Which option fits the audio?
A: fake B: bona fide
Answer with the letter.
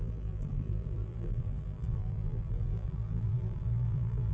A